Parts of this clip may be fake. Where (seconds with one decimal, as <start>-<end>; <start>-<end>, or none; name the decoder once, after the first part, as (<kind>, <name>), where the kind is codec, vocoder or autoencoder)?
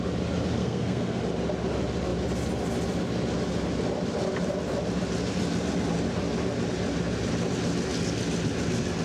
0.6-1.2 (codec, SNAC)